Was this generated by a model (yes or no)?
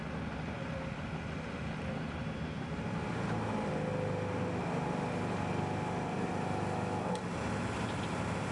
no